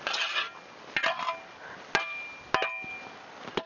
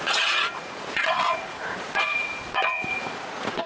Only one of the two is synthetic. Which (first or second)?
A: second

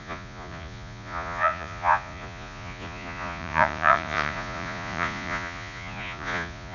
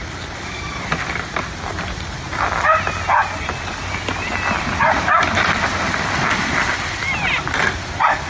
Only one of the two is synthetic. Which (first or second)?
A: first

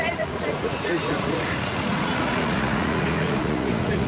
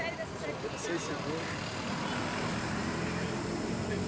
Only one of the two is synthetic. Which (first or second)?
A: first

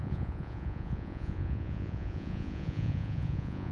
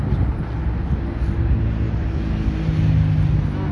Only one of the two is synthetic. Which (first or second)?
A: first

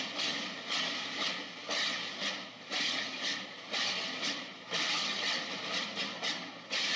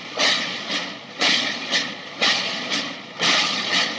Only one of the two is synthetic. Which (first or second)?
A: second